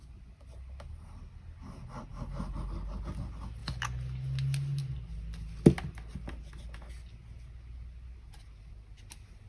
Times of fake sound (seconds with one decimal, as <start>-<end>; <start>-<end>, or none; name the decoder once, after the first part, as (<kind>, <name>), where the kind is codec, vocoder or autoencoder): none